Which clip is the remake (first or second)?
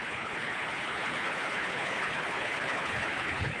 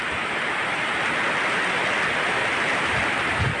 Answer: first